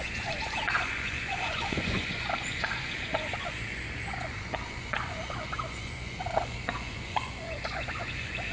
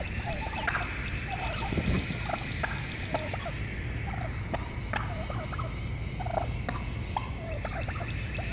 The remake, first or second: first